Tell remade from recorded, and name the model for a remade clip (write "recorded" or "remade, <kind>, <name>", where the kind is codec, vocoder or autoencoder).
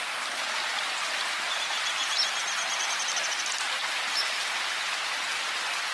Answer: recorded